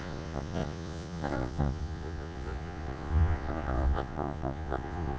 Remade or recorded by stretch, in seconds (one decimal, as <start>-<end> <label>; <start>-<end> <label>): 0.0-5.2 remade